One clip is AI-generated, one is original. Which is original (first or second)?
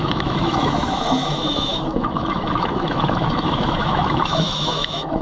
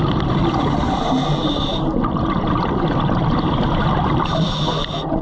second